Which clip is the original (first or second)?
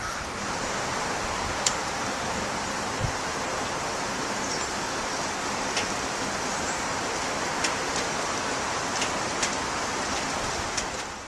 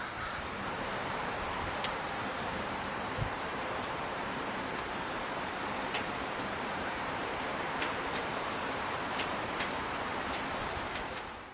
first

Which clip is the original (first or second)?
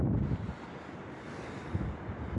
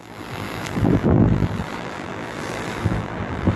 first